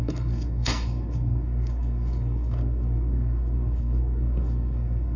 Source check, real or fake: fake